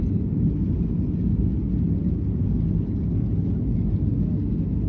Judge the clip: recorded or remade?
recorded